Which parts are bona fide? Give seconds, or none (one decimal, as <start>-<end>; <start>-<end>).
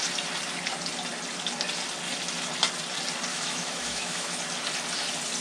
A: 0.0-3.3; 4.4-5.4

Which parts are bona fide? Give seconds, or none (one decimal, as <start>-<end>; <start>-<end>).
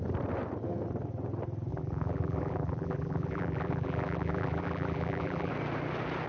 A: 0.0-1.7; 5.5-6.3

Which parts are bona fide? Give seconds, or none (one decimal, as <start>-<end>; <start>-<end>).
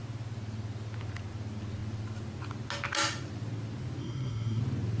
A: 0.0-4.0; 4.6-5.0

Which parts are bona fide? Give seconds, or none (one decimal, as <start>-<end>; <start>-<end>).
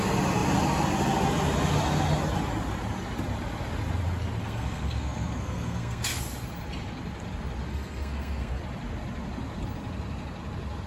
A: 0.0-4.4; 6.2-7.7; 8.6-10.9